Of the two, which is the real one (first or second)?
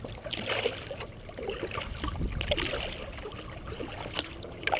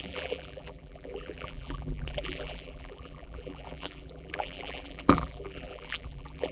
first